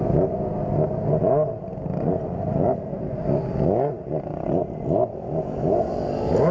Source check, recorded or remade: recorded